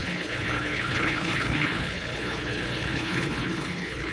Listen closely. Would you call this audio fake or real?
fake